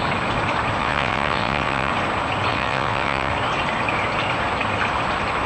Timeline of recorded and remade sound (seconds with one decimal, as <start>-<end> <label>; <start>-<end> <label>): 0.0-0.8 recorded; 0.8-1.9 remade; 1.9-2.5 recorded; 2.5-3.3 remade; 3.3-5.5 recorded